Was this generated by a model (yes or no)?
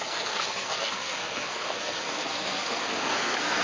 yes